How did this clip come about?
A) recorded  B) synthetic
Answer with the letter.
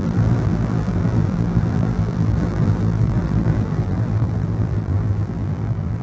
B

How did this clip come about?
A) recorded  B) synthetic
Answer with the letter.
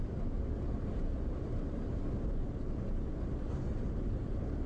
A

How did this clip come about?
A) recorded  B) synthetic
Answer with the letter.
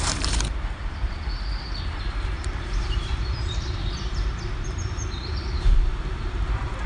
B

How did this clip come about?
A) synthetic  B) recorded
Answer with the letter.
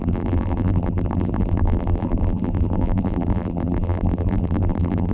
A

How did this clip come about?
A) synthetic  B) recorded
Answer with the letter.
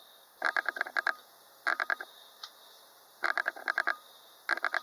A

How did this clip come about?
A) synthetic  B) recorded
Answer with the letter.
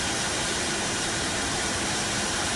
A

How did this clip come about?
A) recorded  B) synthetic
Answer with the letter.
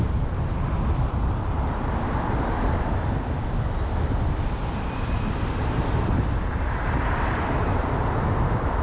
B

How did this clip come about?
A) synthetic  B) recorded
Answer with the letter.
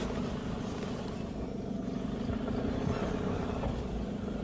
B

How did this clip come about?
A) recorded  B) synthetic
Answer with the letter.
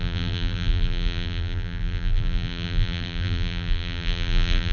B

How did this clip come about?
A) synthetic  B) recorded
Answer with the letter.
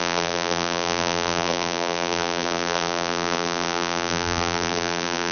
A